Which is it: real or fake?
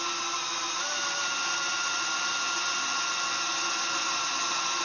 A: real